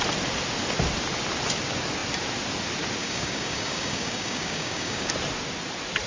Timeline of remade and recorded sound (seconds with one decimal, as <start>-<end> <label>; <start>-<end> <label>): 0.0-3.0 recorded; 3.0-5.1 remade; 5.1-6.1 recorded